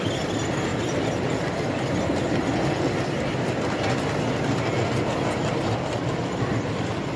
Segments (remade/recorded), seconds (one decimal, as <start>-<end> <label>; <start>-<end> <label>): 0.0-7.2 recorded